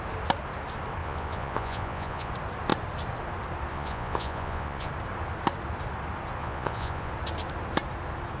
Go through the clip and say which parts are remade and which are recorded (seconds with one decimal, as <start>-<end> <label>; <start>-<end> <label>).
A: 0.0-1.0 recorded; 1.0-2.3 remade; 2.3-3.7 recorded; 3.7-4.9 remade; 4.9-6.4 recorded; 6.4-7.1 remade; 7.1-8.4 recorded